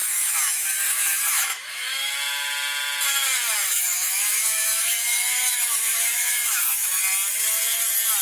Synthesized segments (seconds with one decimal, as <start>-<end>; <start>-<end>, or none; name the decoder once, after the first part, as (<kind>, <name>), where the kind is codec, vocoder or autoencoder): 0.0-2.1 (autoencoder, DAC-VAE); 3.6-7.0